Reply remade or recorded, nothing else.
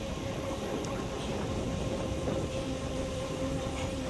recorded